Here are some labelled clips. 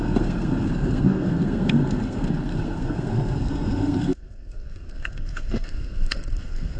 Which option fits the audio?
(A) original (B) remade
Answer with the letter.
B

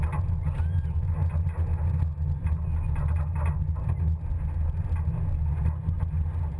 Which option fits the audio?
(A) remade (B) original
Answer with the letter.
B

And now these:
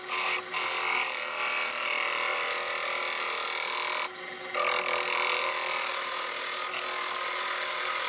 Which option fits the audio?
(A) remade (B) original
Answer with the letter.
B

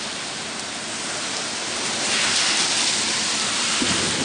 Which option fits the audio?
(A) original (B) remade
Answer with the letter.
A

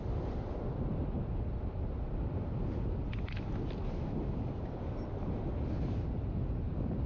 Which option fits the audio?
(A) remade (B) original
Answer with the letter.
B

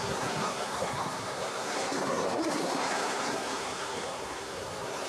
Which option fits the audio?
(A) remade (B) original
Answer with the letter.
A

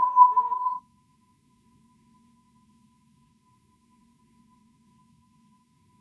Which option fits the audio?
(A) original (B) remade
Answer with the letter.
B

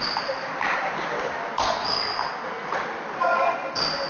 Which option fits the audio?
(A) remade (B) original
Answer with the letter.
B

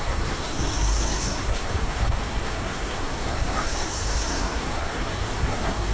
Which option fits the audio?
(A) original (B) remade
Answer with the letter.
B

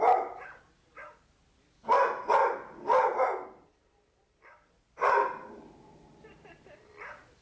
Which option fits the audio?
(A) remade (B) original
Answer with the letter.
B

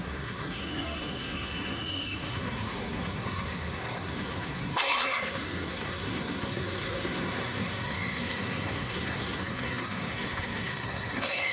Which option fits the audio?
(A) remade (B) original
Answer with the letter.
A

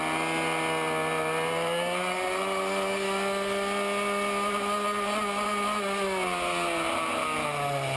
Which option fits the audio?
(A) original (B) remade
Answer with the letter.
A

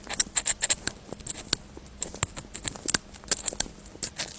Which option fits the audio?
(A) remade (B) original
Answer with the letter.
B